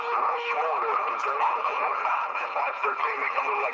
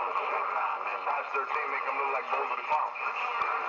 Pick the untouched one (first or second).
second